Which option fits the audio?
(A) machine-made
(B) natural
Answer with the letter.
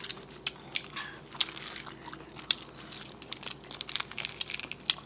B